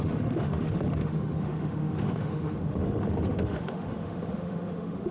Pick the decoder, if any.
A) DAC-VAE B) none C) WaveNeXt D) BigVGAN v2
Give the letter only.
A